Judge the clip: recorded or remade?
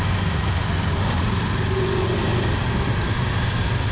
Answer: recorded